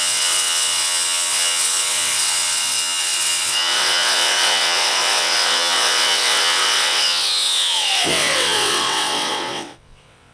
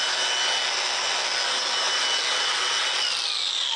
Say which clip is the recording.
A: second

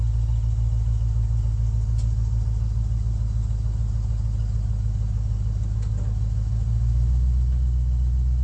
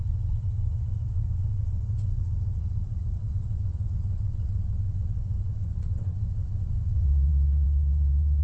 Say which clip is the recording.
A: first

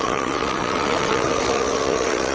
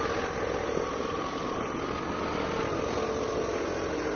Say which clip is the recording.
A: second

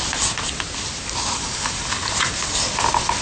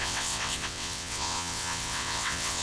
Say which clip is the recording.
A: first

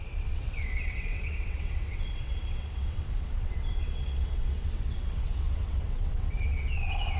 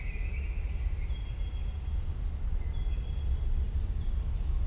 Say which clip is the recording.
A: second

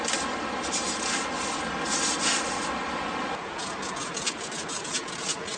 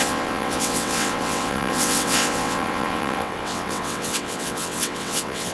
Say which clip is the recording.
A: first